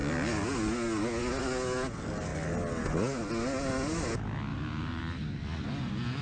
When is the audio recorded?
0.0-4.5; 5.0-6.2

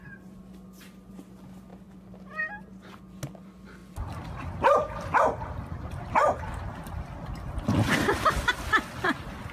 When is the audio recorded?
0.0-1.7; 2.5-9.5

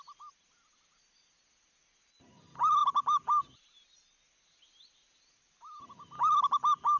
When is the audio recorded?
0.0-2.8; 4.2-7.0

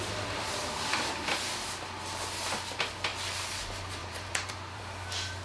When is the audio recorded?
0.0-0.6; 1.3-4.0; 4.8-5.4

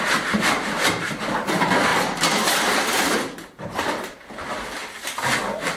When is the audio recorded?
4.8-5.8